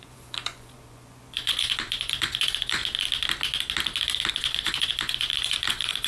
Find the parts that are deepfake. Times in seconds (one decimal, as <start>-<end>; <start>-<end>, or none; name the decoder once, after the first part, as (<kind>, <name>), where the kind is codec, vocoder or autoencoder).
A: 0.0-2.8 (vocoder, Vocos); 4.3-6.1

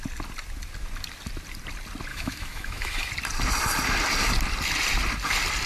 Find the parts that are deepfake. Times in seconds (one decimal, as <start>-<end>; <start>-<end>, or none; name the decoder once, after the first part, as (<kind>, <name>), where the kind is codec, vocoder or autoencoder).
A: 2.1-3.1 (autoencoder, DAC-VAE)

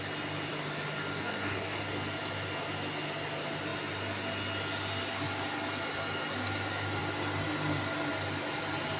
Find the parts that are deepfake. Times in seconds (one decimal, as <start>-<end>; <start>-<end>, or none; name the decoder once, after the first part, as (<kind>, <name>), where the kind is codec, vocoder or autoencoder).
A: 1.1-1.8 (codec, DAC)